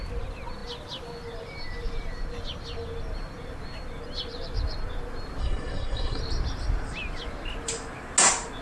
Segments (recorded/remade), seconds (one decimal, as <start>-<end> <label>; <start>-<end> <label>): 0.0-5.4 recorded; 5.4-6.2 remade; 6.2-8.6 recorded